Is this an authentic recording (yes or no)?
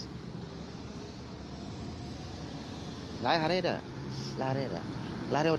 yes